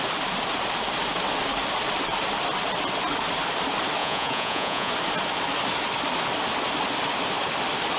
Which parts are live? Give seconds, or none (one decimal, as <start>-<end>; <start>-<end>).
0.0-4.0; 4.9-8.0